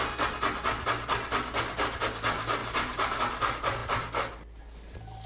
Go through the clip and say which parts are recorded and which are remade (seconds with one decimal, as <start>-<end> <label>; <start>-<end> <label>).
0.0-2.6 recorded; 2.6-3.2 remade; 3.2-5.3 recorded